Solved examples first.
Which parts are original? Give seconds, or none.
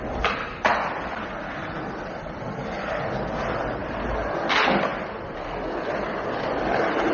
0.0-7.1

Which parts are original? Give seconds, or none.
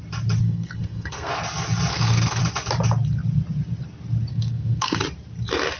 0.0-0.4; 1.3-1.9; 2.4-4.3; 5.0-5.8